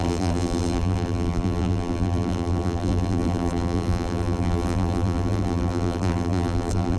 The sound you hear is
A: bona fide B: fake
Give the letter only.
B